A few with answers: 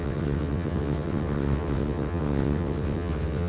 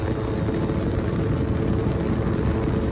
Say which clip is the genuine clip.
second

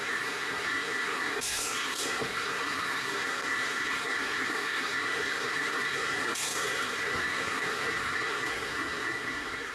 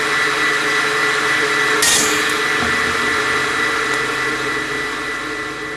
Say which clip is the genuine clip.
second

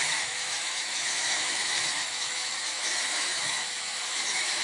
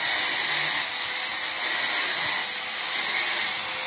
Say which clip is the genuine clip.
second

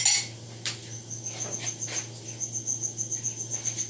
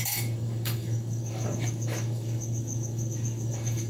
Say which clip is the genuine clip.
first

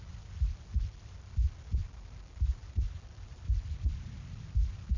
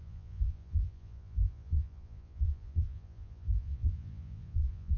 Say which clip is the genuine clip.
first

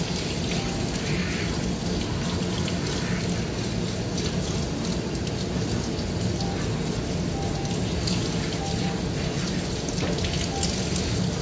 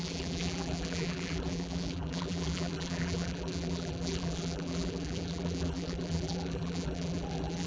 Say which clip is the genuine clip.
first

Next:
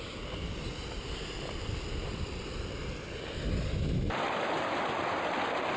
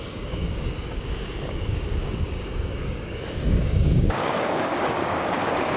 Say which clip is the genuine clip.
first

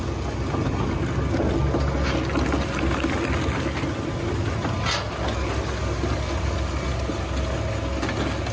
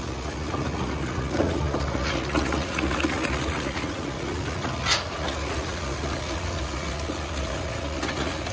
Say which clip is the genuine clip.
first